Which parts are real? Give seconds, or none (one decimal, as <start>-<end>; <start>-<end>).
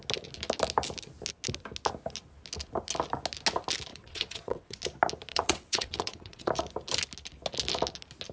0.0-3.9; 4.8-5.3; 6.5-8.3